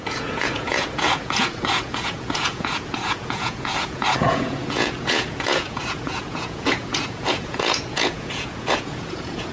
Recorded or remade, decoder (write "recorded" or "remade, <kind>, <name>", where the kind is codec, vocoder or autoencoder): remade, vocoder, Vocos